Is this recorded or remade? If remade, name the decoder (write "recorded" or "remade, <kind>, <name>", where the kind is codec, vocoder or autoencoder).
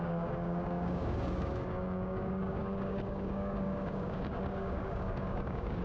remade, codec, DAC